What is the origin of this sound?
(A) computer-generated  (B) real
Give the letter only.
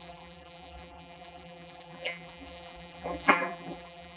A